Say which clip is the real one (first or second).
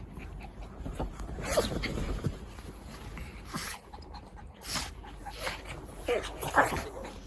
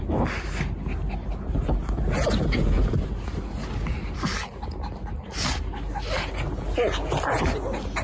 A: second